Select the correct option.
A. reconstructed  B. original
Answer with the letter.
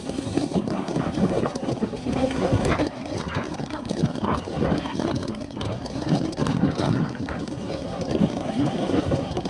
A